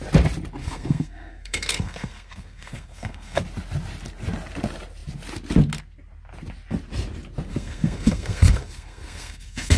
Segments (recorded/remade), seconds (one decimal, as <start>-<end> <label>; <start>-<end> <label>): 0.0-0.6 recorded; 0.6-3.4 remade; 3.4-7.5 recorded; 7.5-9.8 remade